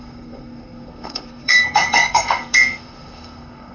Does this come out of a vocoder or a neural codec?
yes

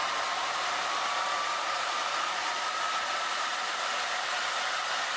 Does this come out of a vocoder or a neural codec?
yes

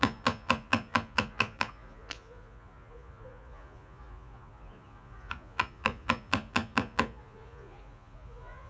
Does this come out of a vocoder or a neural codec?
yes